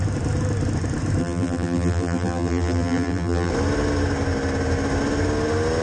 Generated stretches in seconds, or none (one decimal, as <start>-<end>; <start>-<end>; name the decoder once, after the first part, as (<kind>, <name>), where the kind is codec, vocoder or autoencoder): 1.2-3.5 (vocoder, BigVGAN v2)